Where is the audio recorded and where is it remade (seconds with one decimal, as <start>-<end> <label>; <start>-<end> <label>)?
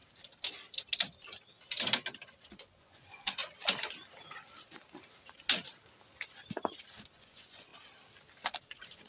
0.0-2.6 recorded; 2.6-3.4 remade; 3.4-7.1 recorded; 7.1-7.7 remade; 7.7-8.6 recorded; 8.6-9.1 remade